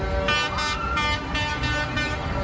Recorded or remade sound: recorded